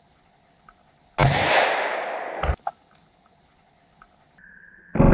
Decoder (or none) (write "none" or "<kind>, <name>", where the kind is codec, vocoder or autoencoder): none